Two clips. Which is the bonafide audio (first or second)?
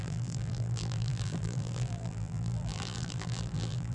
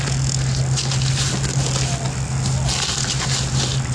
second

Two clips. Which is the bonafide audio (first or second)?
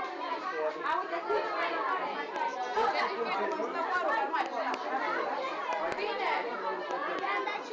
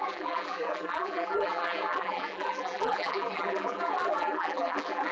first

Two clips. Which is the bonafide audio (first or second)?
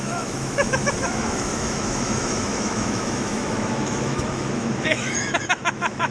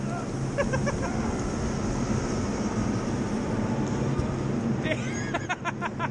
second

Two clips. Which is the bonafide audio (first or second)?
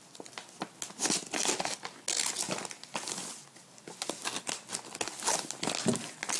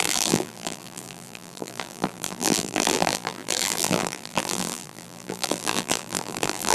first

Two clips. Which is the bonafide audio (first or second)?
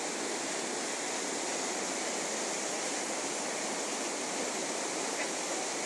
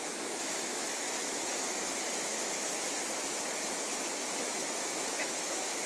first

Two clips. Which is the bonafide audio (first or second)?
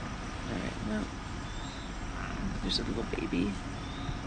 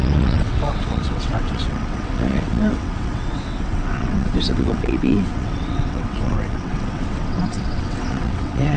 first